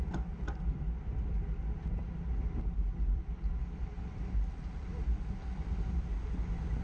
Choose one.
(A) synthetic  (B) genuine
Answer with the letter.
B